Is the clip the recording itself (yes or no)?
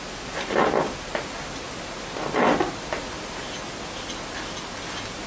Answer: yes